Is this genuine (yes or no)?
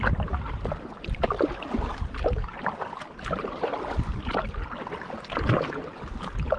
yes